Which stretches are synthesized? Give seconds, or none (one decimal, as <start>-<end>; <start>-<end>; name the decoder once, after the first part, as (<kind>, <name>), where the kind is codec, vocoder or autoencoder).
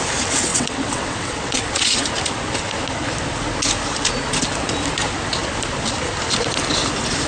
0.5-2.0 (vocoder, WaveNeXt)